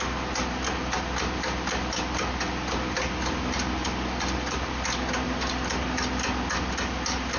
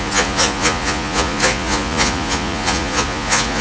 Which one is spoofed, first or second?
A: second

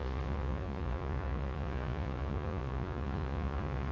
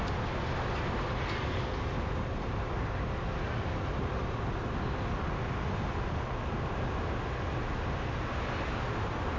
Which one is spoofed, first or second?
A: first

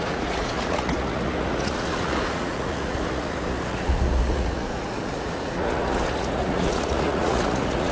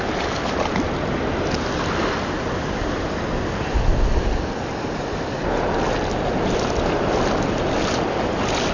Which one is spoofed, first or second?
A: first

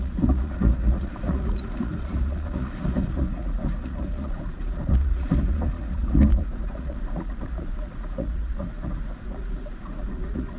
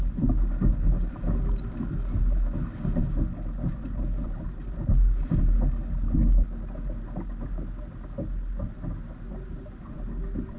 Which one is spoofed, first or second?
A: first